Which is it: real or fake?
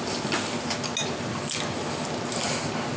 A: real